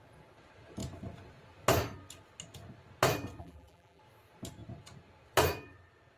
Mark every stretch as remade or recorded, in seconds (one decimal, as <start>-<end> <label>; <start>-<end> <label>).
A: 0.0-3.4 recorded; 3.4-4.0 remade; 4.0-6.2 recorded